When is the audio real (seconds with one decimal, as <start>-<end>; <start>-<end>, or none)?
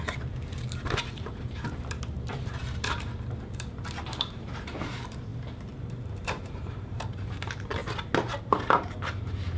7.8-8.4